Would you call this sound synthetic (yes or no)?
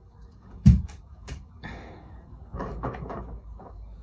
yes